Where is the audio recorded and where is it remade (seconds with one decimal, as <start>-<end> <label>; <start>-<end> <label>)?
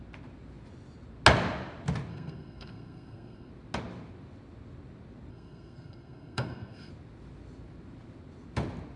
0.0-2.1 recorded; 2.1-3.5 remade; 3.5-5.3 recorded; 5.3-6.9 remade; 6.9-9.0 recorded